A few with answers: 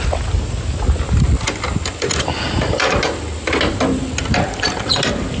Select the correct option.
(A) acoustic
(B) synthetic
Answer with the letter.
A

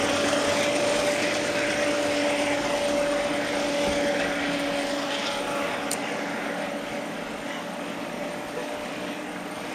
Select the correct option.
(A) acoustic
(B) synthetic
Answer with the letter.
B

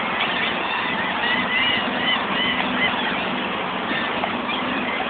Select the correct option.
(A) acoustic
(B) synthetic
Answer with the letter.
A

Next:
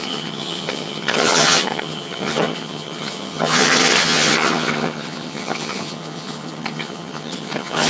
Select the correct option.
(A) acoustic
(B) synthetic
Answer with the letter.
B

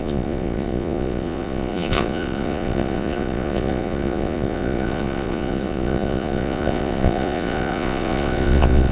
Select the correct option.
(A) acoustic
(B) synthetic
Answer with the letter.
B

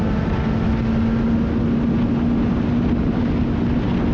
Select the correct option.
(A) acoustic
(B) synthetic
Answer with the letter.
A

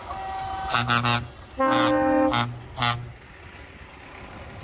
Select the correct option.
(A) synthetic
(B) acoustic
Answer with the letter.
B